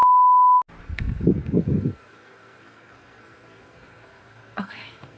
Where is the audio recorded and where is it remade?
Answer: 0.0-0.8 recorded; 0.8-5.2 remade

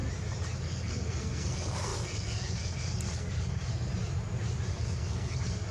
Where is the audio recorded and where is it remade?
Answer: 0.0-0.6 recorded; 0.6-3.9 remade; 3.9-4.7 recorded; 4.7-5.7 remade

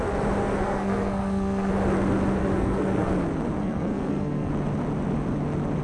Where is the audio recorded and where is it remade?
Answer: 0.0-0.4 recorded; 0.4-1.7 remade; 1.7-2.4 recorded; 2.4-3.1 remade; 3.1-3.6 recorded; 3.6-4.5 remade; 4.5-5.8 recorded